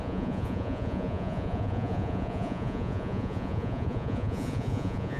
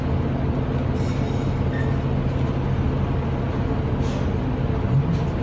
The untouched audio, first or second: second